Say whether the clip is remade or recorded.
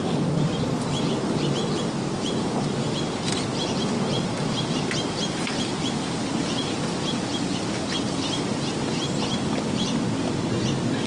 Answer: recorded